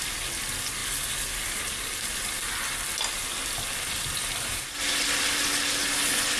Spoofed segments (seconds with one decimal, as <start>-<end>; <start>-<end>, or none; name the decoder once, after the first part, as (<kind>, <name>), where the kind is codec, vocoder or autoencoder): none